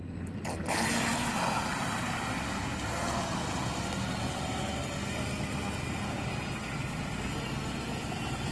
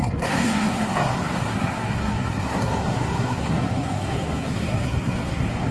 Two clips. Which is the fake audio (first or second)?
second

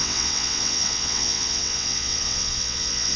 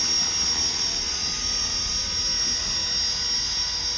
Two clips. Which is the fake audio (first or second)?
first